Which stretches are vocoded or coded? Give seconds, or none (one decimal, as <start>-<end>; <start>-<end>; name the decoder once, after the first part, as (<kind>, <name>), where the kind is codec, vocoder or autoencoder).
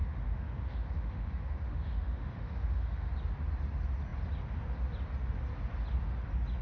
0.0-3.1 (autoencoder, DAC-VAE)